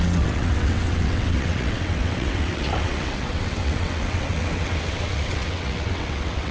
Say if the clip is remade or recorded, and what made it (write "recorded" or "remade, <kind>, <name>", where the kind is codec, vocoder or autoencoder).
remade, vocoder, WaveNeXt